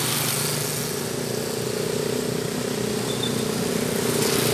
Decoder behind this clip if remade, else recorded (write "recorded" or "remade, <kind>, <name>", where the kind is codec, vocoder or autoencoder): recorded